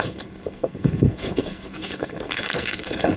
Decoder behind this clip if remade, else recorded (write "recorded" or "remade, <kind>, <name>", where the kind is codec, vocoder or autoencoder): remade, codec, SNAC